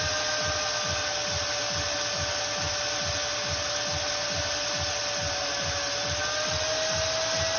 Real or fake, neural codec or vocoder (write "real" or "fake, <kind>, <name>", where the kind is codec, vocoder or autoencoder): real